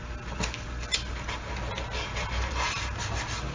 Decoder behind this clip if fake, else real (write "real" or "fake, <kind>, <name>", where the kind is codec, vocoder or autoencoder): real